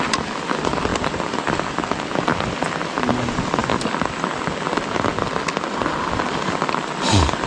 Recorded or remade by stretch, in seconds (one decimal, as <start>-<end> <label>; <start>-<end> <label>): 0.0-7.5 recorded

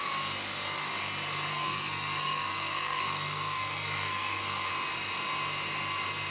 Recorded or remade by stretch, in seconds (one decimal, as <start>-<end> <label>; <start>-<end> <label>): 0.0-1.5 recorded; 1.5-4.7 remade; 4.7-6.3 recorded